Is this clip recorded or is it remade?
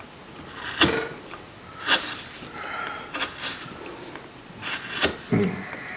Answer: recorded